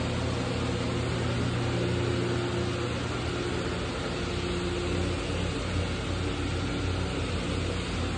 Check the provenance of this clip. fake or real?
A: real